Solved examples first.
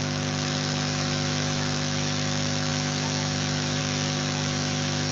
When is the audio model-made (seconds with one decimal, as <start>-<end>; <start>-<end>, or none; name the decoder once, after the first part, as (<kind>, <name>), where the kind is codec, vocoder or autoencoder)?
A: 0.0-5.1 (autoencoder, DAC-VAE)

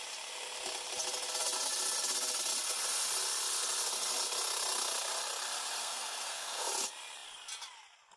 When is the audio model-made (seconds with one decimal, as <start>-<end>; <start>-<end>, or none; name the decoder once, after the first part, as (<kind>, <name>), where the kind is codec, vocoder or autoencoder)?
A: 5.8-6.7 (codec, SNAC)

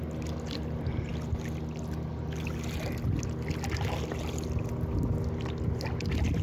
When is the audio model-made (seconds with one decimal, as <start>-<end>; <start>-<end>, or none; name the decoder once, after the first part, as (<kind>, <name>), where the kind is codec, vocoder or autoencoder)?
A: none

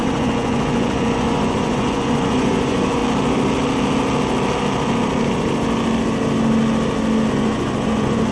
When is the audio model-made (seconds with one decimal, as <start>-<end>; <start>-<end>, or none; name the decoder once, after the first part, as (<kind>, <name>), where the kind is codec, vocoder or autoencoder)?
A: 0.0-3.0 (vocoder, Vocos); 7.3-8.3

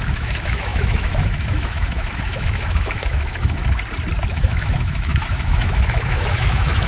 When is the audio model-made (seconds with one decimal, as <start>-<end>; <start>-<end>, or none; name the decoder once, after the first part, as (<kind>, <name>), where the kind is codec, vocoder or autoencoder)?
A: 0.0-3.6 (autoencoder, DAC-VAE); 4.3-6.9